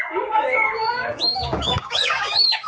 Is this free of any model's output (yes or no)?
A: no